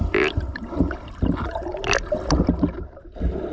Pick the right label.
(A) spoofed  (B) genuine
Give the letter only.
B